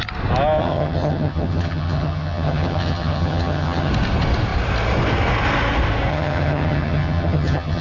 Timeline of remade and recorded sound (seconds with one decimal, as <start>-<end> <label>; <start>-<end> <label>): 0.0-0.6 recorded; 0.6-3.9 remade; 3.9-6.1 recorded; 6.1-7.8 remade